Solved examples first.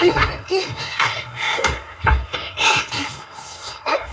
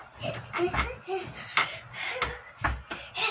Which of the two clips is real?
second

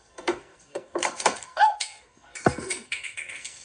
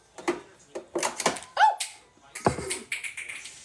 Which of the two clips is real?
second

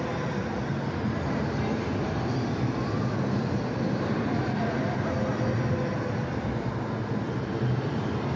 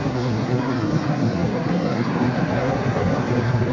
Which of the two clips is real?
first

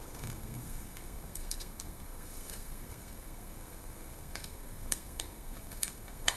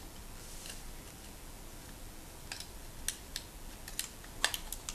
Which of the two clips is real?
second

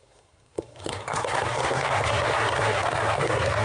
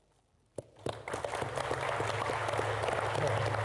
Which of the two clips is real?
second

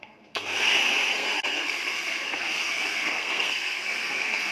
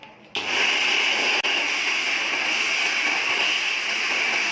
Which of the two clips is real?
second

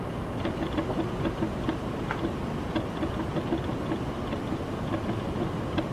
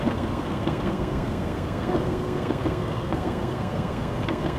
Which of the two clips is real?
first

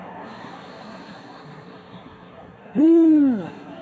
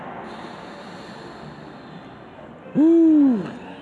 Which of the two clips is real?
second